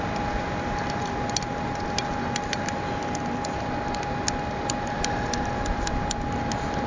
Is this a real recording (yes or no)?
yes